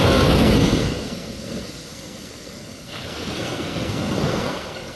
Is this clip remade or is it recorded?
remade